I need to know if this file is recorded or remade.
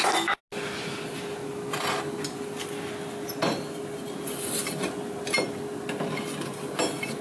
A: recorded